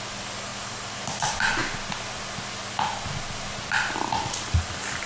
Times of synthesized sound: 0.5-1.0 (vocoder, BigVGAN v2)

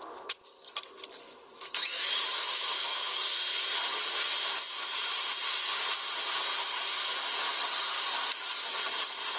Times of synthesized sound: 1.9-3.2 (autoencoder, DAC-VAE)

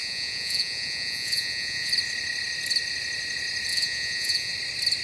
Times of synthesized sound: 0.0-1.9 (vocoder, Vocos); 3.7-4.5

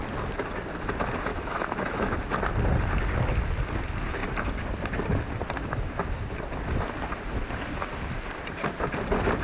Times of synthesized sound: 1.3-2.1 (autoencoder, DAC-VAE)